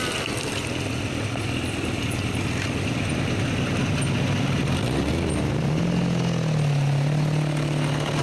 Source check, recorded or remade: recorded